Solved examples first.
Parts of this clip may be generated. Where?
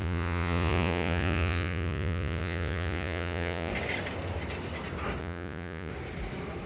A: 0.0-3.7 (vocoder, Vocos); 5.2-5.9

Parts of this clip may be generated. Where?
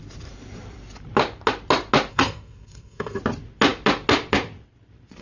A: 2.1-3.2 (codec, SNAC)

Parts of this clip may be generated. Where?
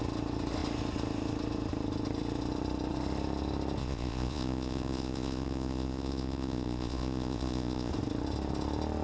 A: 3.8-7.9 (vocoder, Vocos)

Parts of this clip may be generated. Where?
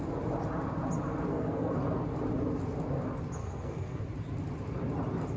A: 1.3-1.8 (codec, SNAC); 3.4-4.0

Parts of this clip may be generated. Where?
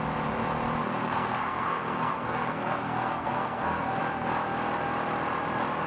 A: 0.8-4.0 (codec, SNAC)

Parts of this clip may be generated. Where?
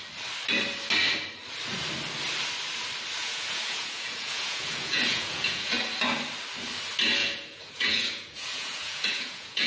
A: 3.2-5.8 (vocoder, Vocos); 7.2-9.7